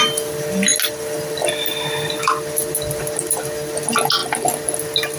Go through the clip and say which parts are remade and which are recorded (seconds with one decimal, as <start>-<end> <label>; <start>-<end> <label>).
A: 0.0-5.2 recorded